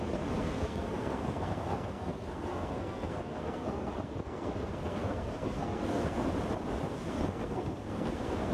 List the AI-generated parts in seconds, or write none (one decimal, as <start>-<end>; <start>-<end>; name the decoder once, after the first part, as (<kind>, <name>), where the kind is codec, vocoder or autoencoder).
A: 0.0-6.3 (codec, SNAC); 6.8-8.5